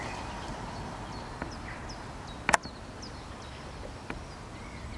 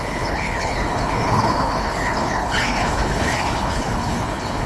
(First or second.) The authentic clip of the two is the first